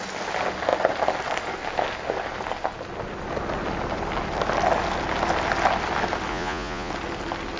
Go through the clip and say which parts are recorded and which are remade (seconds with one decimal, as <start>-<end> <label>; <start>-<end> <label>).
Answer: 0.0-6.3 recorded; 6.3-6.9 remade; 6.9-7.6 recorded